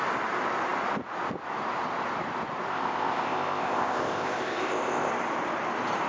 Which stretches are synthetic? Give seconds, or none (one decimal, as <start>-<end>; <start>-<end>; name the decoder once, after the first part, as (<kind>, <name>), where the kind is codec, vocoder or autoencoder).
2.7-5.1 (codec, ZipCodec)